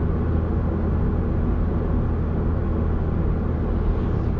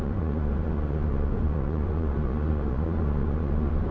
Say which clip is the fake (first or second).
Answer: second